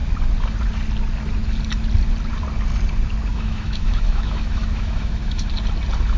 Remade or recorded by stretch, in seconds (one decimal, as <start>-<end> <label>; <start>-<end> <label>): 0.0-3.3 recorded; 3.3-5.5 remade; 5.5-6.2 recorded